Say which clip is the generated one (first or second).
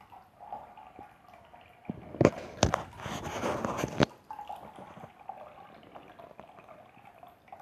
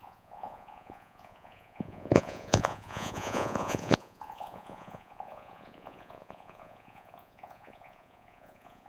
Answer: second